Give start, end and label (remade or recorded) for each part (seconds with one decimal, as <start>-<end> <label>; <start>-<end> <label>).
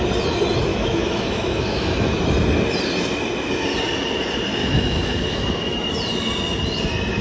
0.0-0.7 recorded; 0.7-2.2 remade; 2.2-4.6 recorded; 4.6-5.9 remade; 5.9-7.2 recorded